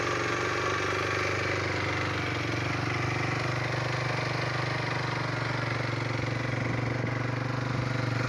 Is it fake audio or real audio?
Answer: real